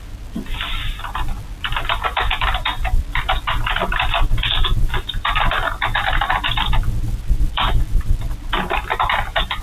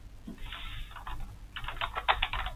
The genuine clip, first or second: second